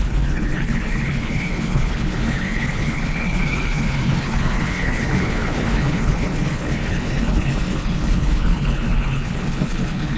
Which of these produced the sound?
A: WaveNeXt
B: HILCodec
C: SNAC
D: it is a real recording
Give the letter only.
B